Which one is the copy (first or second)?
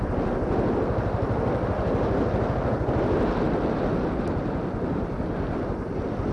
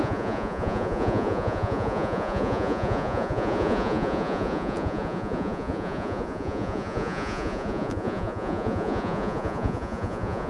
second